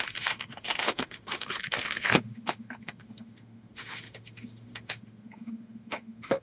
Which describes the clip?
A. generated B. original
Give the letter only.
A